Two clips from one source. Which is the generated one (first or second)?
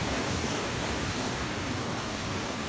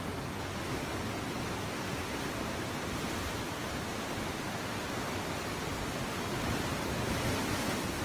first